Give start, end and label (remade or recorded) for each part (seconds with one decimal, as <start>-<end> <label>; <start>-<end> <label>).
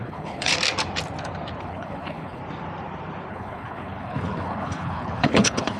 0.0-0.5 remade; 0.5-1.6 recorded; 1.6-2.4 remade; 2.4-3.3 recorded; 3.3-5.8 remade